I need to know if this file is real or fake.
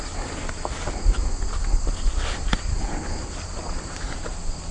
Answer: real